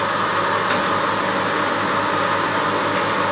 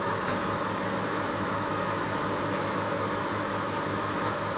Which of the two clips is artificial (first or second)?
second